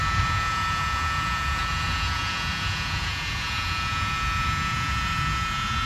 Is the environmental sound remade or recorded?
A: remade